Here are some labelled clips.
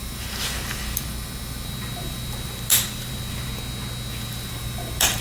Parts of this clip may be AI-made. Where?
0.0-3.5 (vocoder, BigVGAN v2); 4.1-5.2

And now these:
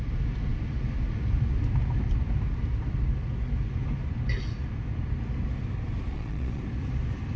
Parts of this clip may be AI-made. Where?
6.1-6.6 (vocoder, Vocos)

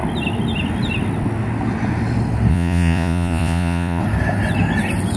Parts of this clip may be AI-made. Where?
2.5-4.0 (vocoder, Vocos)

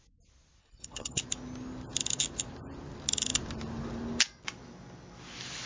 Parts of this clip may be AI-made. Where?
0.6-1.2 (codec, HILCodec)

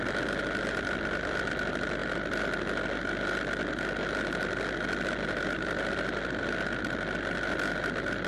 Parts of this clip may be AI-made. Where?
none